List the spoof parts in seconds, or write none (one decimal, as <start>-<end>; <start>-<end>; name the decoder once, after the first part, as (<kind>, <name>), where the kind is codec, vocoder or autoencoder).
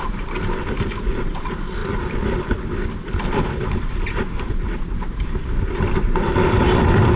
none